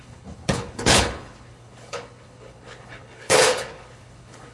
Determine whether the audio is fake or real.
fake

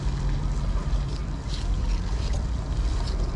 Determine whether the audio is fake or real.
real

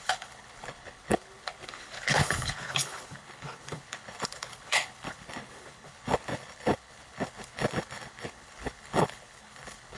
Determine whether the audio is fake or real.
fake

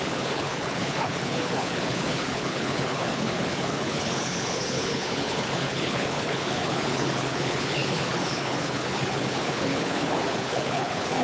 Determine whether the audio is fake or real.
fake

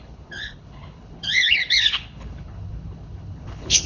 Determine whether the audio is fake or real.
fake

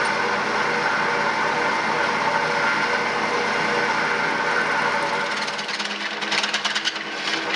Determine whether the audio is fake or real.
real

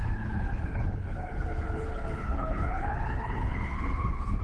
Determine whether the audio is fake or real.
fake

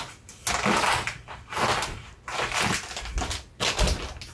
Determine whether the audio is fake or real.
real